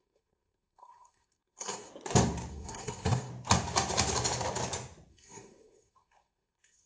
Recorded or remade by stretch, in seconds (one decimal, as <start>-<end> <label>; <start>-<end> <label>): 0.0-1.9 remade; 1.9-2.5 recorded; 2.5-3.3 remade; 3.3-5.1 recorded; 5.1-6.9 remade